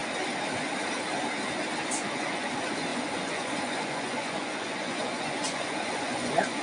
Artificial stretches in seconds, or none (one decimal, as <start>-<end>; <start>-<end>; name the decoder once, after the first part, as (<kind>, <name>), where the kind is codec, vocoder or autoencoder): 1.9-6.6 (vocoder, Vocos)